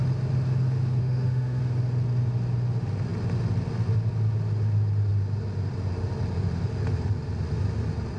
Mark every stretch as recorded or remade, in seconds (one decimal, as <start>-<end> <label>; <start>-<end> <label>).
0.0-1.0 recorded; 1.0-1.6 remade; 1.6-8.2 recorded